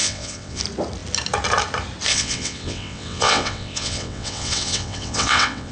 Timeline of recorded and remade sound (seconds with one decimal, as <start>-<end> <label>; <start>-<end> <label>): 0.0-0.6 remade; 0.6-2.1 recorded; 2.1-5.7 remade